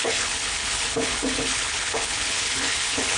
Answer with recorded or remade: remade